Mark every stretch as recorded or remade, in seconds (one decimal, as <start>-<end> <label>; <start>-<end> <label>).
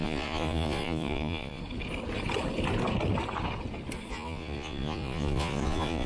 0.0-1.6 remade; 1.6-4.1 recorded; 4.1-6.1 remade